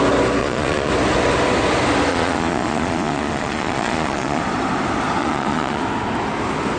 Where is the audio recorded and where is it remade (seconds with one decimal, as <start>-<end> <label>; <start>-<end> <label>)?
0.0-0.4 recorded; 0.4-0.9 remade; 0.9-2.1 recorded; 2.1-4.4 remade; 4.4-5.2 recorded; 5.2-5.8 remade; 5.8-6.8 recorded